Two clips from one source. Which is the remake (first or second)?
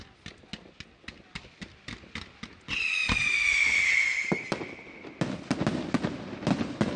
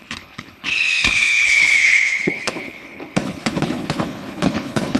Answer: second